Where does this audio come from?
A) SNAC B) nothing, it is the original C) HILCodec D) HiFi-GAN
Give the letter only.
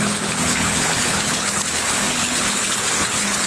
C